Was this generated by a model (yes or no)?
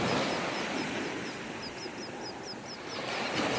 no